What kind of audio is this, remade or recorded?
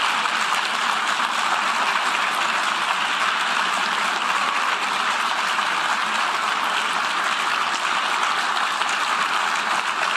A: recorded